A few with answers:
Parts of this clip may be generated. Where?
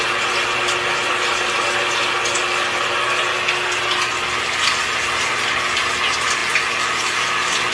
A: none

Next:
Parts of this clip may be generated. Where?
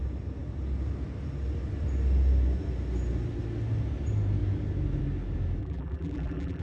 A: 5.6-6.6 (vocoder, BigVGAN v2)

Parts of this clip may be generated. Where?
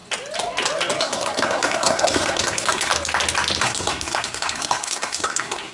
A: 1.0-2.9 (codec, SNAC); 3.6-5.7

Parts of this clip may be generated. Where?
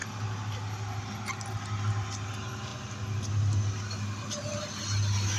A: none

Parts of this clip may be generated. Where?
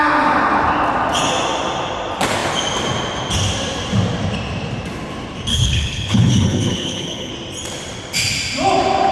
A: 5.5-7.3 (codec, HILCodec)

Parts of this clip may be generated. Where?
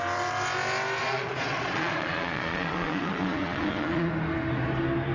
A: 1.0-4.1 (vocoder, Vocos)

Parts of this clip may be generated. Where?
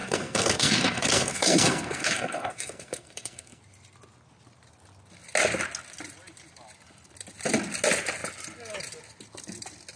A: 0.0-3.6 (codec, SNAC)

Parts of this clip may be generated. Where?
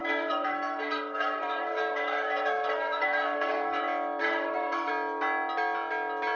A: 0.0-3.8 (codec, SNAC); 4.2-4.9